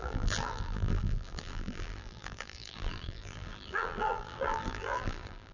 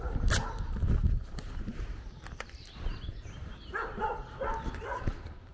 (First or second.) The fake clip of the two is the first